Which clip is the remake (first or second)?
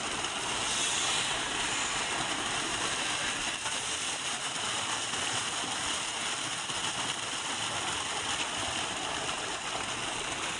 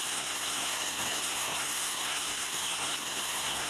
second